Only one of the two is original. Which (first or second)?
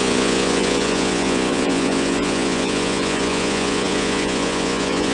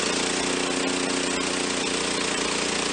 second